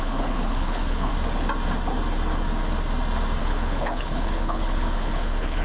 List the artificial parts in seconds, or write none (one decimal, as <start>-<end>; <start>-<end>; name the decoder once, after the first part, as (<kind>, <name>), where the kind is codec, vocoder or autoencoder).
0.0-1.1 (codec, HILCodec); 3.4-5.6